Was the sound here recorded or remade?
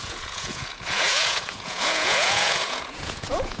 remade